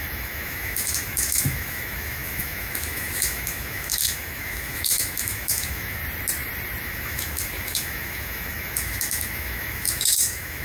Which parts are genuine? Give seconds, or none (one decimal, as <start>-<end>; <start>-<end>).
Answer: 6.0-6.8